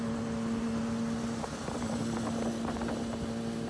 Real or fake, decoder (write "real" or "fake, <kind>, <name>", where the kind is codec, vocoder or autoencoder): real